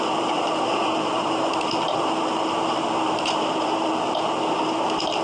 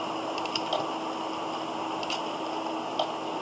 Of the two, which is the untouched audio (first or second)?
second